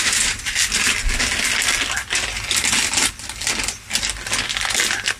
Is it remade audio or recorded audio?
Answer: recorded